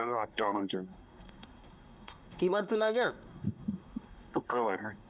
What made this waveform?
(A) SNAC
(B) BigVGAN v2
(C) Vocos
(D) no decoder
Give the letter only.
A